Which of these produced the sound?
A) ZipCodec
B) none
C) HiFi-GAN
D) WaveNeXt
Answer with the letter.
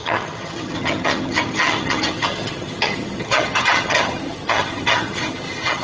C